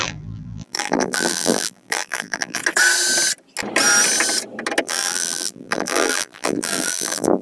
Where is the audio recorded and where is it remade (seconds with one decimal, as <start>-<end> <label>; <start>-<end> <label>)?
0.0-2.6 remade; 2.6-4.8 recorded; 4.8-7.4 remade